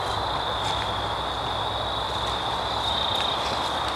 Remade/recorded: recorded